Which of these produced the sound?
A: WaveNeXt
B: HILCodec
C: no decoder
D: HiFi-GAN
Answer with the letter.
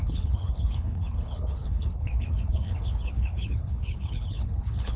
B